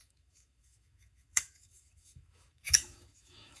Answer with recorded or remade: remade